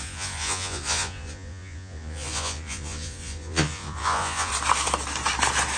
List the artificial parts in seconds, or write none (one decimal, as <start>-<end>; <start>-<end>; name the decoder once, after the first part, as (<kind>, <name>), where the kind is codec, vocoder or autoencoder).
0.0-4.5 (vocoder, Vocos)